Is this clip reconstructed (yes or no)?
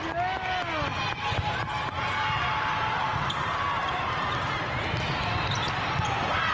no